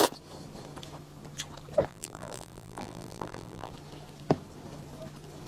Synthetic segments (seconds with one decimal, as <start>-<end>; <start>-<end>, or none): 1.9-3.7